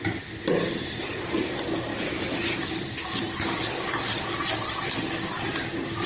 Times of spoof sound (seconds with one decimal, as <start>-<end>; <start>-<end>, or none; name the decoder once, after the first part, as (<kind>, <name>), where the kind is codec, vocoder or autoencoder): 1.9-2.4 (autoencoder, DAC-VAE)